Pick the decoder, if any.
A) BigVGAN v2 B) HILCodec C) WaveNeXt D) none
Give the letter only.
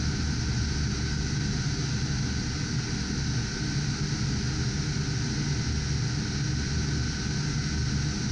D